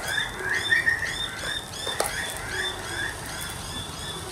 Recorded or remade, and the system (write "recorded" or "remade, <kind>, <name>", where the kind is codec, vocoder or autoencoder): recorded